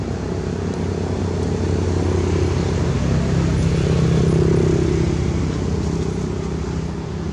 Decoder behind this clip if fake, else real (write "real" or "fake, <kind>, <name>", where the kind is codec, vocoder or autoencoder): real